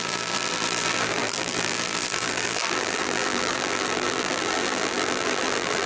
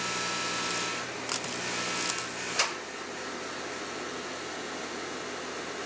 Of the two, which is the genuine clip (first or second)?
second